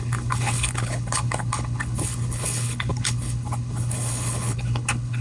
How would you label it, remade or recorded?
remade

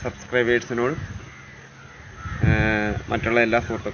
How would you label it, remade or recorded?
recorded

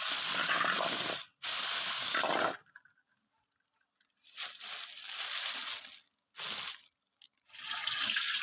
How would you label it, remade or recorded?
recorded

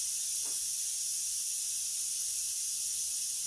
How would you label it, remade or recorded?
recorded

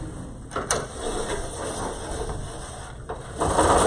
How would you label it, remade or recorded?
recorded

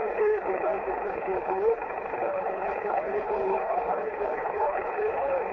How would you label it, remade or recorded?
remade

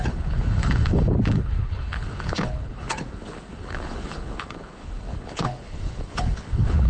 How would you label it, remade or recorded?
remade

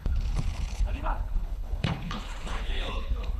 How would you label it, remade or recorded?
remade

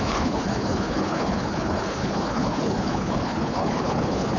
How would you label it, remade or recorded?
remade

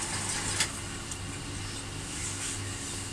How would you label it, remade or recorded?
recorded